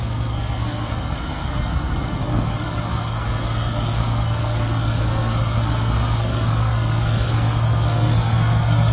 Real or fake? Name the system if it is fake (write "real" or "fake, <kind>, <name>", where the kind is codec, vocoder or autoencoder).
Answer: fake, codec, SNAC